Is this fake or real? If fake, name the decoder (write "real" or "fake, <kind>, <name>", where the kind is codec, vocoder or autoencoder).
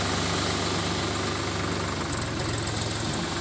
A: real